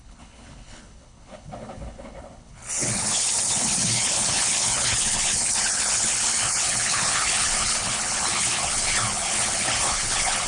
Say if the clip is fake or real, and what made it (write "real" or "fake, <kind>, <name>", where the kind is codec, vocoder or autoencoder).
fake, codec, HILCodec